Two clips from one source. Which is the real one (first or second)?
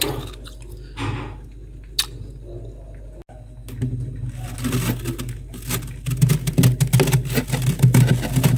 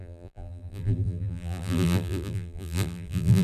first